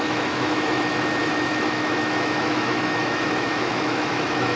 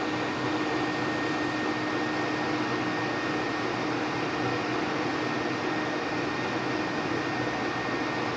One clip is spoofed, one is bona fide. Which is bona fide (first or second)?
second